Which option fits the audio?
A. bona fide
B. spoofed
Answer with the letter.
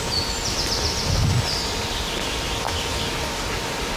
A